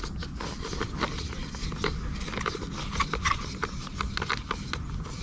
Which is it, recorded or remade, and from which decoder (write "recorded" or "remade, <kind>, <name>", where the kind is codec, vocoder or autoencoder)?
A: recorded